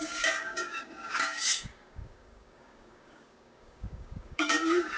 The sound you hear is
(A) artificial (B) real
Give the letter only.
A